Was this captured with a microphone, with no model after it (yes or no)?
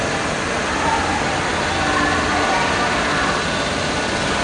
yes